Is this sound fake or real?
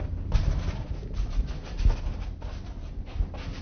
real